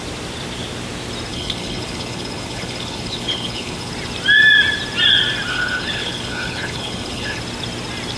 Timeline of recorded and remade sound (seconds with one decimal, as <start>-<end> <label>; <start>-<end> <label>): 0.0-1.3 recorded; 1.3-3.9 remade; 3.9-5.5 recorded; 5.5-7.4 remade; 7.4-8.2 recorded